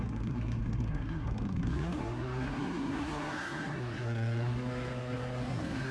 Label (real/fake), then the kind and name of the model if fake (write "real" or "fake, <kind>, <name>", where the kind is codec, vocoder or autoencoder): fake, codec, SNAC